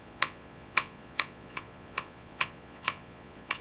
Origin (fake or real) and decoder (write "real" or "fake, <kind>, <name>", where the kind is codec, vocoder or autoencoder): fake, vocoder, Vocos